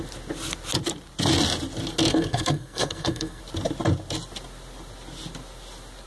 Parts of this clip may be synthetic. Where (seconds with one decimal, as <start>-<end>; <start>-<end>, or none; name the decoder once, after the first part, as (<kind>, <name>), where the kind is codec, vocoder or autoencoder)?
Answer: 2.1-3.4 (codec, SNAC)